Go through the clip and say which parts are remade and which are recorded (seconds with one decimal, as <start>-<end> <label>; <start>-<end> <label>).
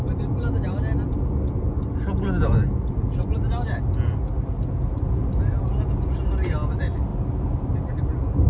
0.0-8.5 recorded